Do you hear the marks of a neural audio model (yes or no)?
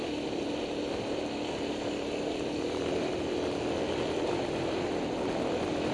no